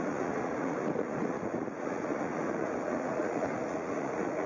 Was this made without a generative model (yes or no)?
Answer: no